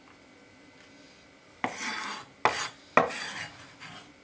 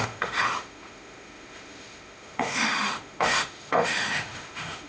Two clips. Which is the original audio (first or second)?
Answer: first